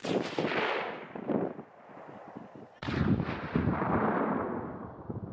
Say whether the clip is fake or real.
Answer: real